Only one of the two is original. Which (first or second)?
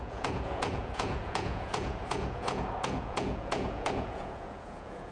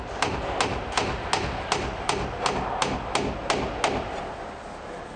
second